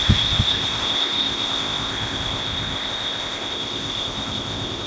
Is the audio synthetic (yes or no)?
yes